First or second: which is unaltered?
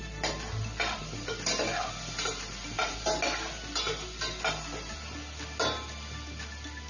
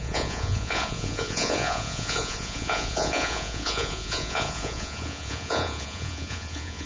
first